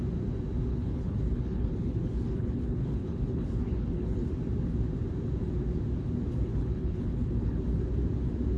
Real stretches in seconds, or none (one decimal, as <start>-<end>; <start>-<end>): 0.0-0.7; 4.3-6.5; 7.6-8.6